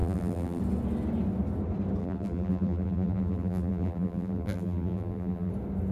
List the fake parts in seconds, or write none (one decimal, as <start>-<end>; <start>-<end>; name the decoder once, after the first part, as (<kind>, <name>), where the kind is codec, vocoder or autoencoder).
0.0-0.6 (vocoder, BigVGAN v2); 2.0-5.5